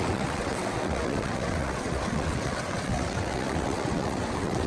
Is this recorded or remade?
remade